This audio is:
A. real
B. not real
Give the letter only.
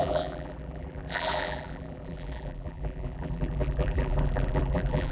B